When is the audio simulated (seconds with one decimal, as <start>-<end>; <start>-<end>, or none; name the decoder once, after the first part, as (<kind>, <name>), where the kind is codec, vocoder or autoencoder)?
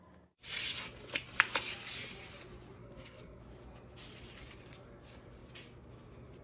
2.8-3.4 (codec, SNAC)